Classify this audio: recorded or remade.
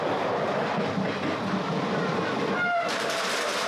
recorded